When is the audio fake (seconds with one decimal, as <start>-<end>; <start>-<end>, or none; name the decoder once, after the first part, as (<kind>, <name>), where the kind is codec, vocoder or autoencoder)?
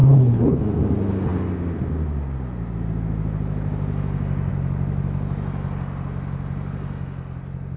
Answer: 0.0-0.6 (codec, HILCodec)